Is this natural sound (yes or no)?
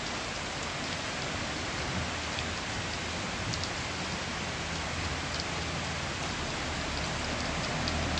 yes